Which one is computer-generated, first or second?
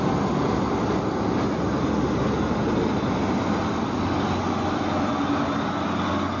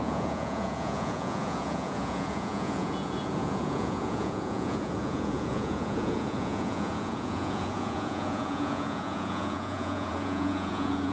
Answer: second